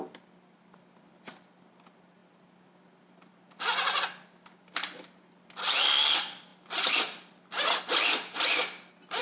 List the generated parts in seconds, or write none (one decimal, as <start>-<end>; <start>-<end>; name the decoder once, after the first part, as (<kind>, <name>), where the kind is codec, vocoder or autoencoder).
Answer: none